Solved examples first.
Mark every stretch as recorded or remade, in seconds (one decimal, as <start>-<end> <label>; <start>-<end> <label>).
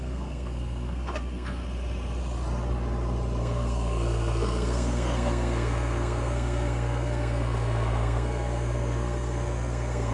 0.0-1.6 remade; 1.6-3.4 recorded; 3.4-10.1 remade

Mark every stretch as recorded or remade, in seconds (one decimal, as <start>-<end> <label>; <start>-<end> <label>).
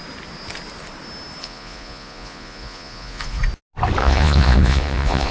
0.0-1.4 recorded; 1.4-3.4 remade; 3.4-4.0 recorded; 4.0-5.3 remade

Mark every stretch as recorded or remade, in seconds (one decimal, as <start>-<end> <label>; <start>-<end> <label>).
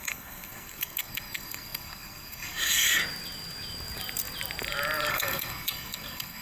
0.0-3.0 remade; 3.0-5.1 recorded; 5.1-6.4 remade